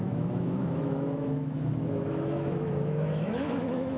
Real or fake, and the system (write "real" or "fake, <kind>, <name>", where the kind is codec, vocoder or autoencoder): fake, autoencoder, DAC-VAE